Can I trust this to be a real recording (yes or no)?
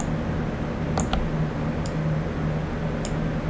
yes